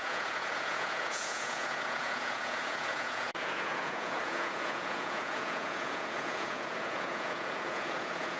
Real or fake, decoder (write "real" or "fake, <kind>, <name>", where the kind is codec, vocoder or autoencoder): fake, vocoder, Vocos